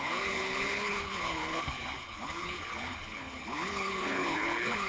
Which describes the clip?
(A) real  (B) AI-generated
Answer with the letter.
B